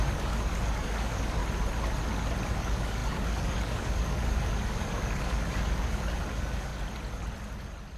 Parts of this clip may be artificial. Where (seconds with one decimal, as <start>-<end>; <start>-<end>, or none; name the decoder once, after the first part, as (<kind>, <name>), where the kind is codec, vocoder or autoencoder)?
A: 0.0-1.4 (codec, DAC); 2.5-6.7